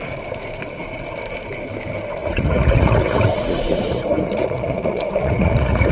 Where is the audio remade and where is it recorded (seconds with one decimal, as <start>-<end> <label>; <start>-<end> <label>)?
0.0-2.2 recorded; 2.2-5.9 remade